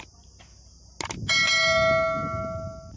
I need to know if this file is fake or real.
real